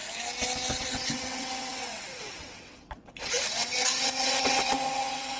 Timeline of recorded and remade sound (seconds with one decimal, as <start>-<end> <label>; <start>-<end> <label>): 0.0-0.8 recorded; 0.8-5.4 remade